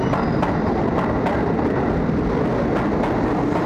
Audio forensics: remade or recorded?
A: recorded